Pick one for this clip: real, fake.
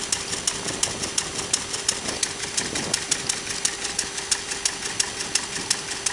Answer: real